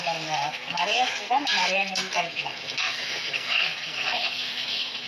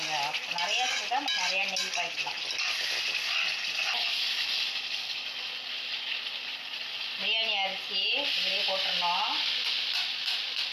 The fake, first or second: first